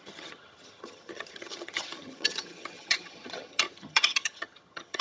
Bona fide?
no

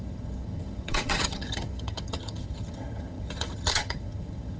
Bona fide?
no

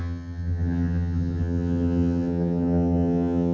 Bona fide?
no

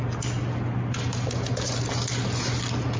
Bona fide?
yes